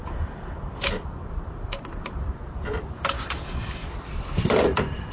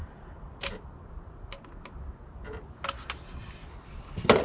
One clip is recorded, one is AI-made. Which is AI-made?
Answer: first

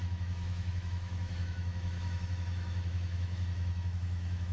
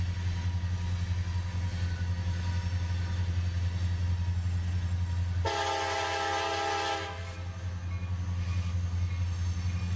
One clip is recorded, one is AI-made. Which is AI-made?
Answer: first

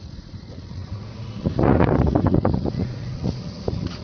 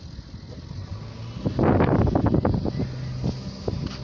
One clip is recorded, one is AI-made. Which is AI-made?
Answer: first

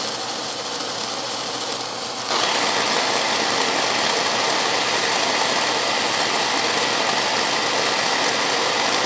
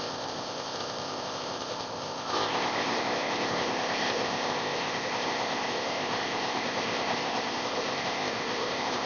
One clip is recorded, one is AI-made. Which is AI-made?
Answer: second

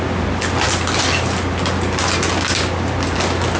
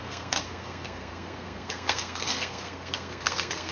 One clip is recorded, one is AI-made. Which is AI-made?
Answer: second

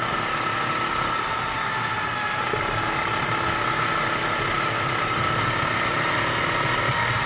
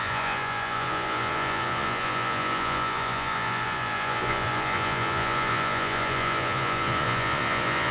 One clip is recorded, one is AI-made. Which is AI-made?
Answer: second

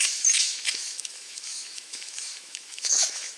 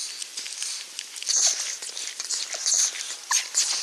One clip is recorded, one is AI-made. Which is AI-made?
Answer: first